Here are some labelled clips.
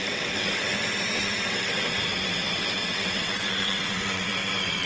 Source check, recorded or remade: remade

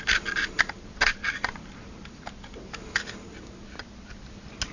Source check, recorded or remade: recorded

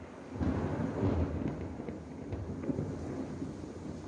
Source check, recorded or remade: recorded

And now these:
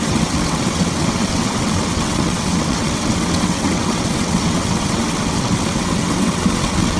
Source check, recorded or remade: remade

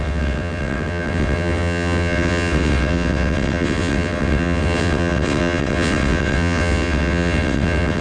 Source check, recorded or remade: remade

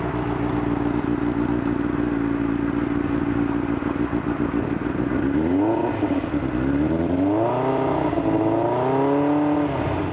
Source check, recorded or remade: recorded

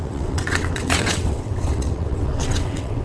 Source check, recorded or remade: remade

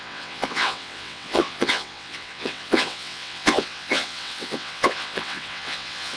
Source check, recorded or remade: remade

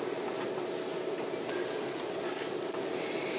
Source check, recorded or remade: recorded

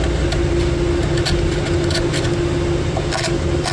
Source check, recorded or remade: recorded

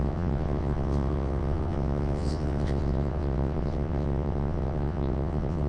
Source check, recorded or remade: remade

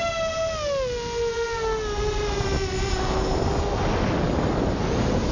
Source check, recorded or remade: recorded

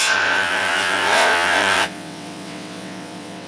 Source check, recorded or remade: remade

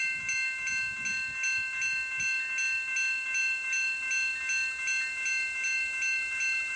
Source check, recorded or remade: recorded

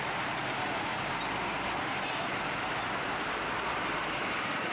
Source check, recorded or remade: recorded